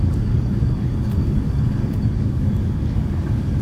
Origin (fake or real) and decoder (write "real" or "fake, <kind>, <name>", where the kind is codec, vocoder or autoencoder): fake, codec, DAC